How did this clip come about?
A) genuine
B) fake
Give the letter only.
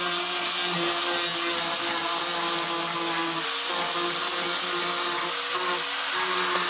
A